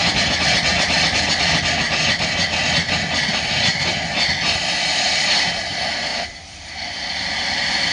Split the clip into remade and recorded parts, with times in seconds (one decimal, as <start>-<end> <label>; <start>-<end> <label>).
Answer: 0.0-0.7 recorded; 0.7-1.6 remade; 1.6-6.1 recorded; 6.1-7.9 remade